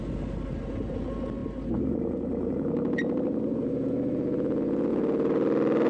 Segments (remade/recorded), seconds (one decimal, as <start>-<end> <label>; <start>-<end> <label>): 0.0-5.9 recorded